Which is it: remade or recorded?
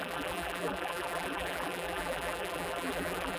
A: remade